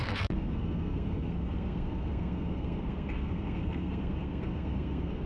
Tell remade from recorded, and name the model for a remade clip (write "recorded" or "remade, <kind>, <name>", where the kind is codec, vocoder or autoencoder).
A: remade, codec, SNAC